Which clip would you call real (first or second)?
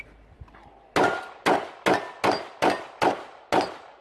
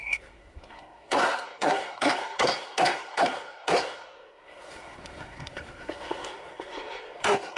first